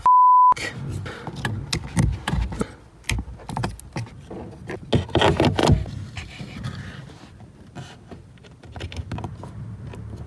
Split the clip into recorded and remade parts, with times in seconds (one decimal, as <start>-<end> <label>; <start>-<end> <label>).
0.0-10.3 recorded